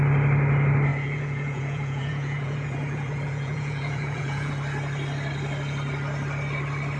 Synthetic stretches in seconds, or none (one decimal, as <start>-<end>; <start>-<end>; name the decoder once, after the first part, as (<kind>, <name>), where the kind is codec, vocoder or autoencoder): 0.9-4.5 (vocoder, Vocos)